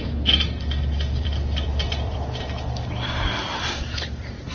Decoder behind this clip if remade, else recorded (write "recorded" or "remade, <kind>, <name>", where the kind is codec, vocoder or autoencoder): remade, vocoder, BigVGAN v2